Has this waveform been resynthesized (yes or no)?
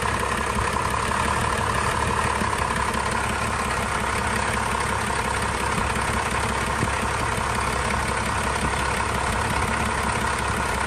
no